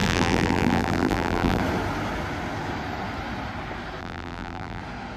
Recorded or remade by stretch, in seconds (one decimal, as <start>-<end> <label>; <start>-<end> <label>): 0.0-1.6 remade; 1.6-4.0 recorded; 4.0-4.8 remade; 4.8-5.2 recorded